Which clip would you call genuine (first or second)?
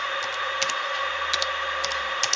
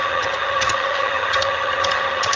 first